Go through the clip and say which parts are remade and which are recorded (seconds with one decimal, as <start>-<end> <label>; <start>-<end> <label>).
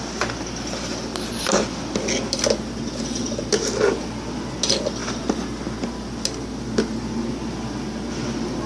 0.0-1.1 recorded; 1.1-1.7 remade; 1.7-8.7 recorded